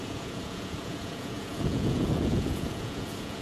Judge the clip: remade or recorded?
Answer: remade